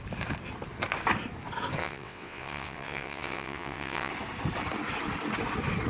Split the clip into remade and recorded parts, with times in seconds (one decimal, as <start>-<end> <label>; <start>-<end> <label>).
0.0-1.8 recorded; 1.8-4.1 remade; 4.1-5.9 recorded